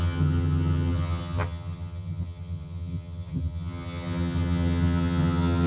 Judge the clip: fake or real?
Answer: fake